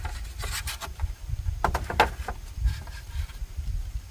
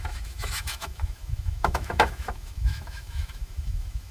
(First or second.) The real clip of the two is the first